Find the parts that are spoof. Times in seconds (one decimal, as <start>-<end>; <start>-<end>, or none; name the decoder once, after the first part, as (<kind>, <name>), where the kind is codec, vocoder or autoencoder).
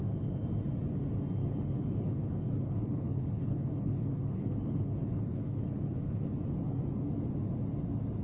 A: 1.4-6.3 (codec, HILCodec)